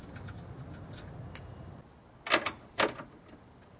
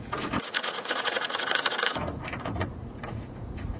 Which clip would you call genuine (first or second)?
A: first